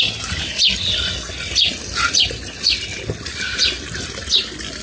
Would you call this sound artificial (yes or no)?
no